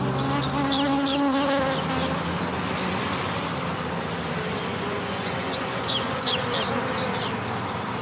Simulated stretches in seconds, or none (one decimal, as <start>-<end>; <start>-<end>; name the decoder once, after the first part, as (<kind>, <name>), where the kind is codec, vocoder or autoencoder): 4.7-6.3 (vocoder, Vocos)